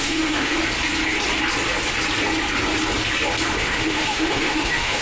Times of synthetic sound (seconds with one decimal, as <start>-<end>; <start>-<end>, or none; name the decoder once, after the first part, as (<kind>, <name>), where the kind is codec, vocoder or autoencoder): 0.0-0.6 (autoencoder, DAC-VAE); 3.6-5.0